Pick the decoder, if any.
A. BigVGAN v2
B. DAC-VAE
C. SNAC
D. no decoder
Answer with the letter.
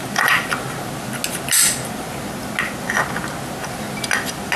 D